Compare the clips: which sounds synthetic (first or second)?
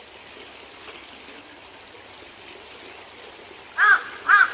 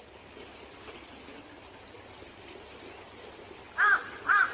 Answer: second